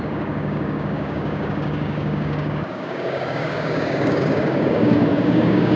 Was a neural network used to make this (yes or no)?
yes